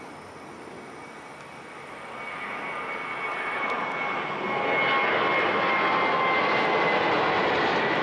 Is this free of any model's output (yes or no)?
yes